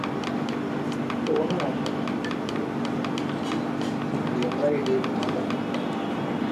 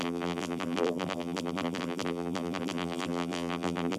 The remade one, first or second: second